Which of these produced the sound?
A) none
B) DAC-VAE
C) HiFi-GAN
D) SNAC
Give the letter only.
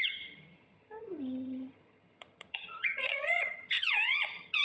C